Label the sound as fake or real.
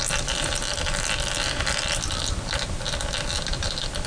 real